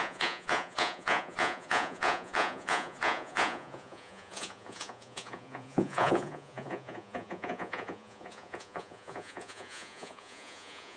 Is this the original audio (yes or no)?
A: no